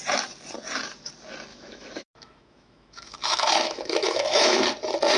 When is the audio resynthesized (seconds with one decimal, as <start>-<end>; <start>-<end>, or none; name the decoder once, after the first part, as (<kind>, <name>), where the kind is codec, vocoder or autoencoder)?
1.5-4.6 (autoencoder, DAC-VAE)